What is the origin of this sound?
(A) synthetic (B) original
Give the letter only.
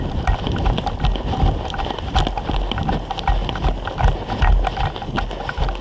B